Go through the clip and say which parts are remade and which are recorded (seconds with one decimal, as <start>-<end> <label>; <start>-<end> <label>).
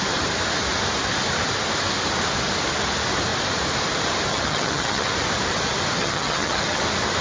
0.0-4.3 recorded; 4.3-5.1 remade; 5.1-6.0 recorded; 6.0-6.8 remade; 6.8-7.2 recorded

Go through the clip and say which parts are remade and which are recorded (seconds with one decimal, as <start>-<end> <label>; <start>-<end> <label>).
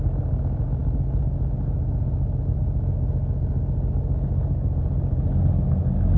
0.0-6.2 recorded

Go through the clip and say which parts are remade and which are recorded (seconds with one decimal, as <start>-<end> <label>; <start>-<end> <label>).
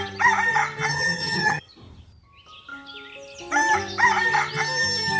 0.0-0.9 recorded; 0.9-1.7 remade; 1.7-5.2 recorded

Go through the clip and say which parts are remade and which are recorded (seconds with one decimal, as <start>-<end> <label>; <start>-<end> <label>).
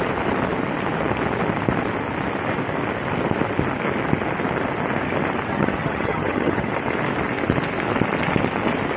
0.0-5.5 recorded; 5.5-6.7 remade; 6.7-9.0 recorded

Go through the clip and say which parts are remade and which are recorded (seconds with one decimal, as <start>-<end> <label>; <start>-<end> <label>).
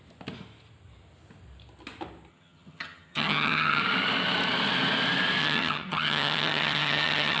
0.0-2.3 recorded; 2.3-3.8 remade; 3.8-5.4 recorded; 5.4-7.4 remade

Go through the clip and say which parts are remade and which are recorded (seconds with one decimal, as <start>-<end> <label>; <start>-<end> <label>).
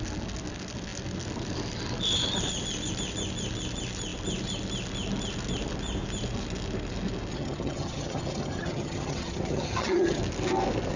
0.0-7.3 recorded; 7.3-10.2 remade; 10.2-11.0 recorded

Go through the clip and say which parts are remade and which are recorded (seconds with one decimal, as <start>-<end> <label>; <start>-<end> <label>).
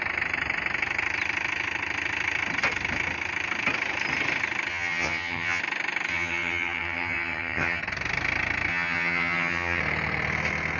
0.0-4.7 recorded; 4.7-5.6 remade; 5.6-6.1 recorded; 6.1-7.8 remade; 7.8-8.7 recorded; 8.7-9.8 remade; 9.8-10.8 recorded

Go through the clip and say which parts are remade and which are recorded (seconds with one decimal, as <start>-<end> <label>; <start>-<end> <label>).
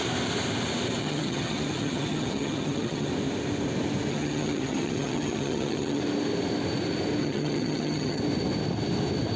0.0-1.0 recorded; 1.0-3.1 remade; 3.1-4.1 recorded; 4.1-6.0 remade; 6.0-7.2 recorded; 7.2-8.2 remade; 8.2-9.4 recorded